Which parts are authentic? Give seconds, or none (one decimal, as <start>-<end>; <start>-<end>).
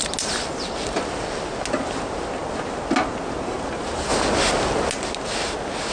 0.0-5.9